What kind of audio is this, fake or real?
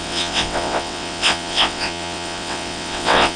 fake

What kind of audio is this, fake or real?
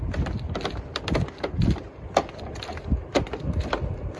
real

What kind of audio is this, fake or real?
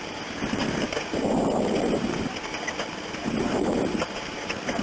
fake